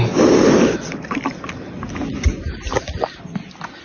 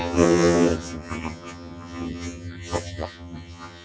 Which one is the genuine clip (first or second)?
first